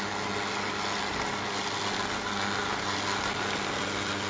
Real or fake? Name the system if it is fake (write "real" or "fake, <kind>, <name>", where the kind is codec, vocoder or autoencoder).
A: real